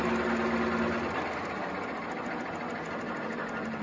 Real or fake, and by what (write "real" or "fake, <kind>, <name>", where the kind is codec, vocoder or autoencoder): real